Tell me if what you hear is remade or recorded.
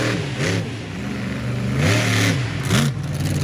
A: recorded